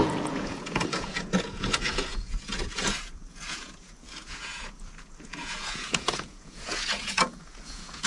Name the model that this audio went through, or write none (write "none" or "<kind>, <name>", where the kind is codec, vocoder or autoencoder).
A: vocoder, Vocos